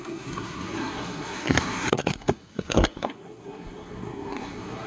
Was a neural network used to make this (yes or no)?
yes